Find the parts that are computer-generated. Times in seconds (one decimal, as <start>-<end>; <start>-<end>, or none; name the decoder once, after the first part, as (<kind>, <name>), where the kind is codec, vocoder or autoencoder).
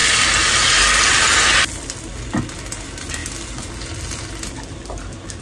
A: none